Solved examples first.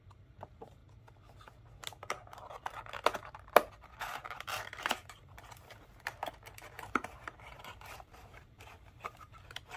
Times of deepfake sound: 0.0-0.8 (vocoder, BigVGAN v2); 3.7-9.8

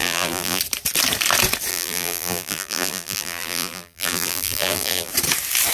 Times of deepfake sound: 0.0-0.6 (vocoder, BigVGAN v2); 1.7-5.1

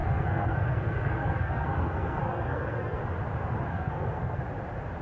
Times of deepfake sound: 0.0-3.0 (codec, SNAC); 3.7-4.4

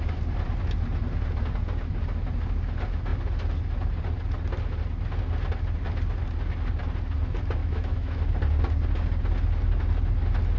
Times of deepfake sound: 7.6-8.2 (autoencoder, DAC-VAE)

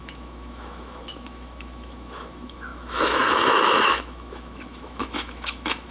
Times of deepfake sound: 0.0-5.9 (autoencoder, DAC-VAE)

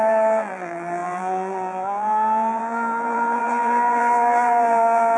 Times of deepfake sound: 0.0-5.2 (vocoder, BigVGAN v2)

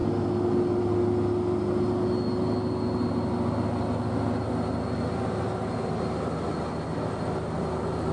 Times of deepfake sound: none

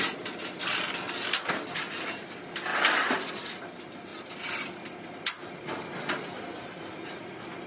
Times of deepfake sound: 2.7-3.3 (vocoder, BigVGAN v2)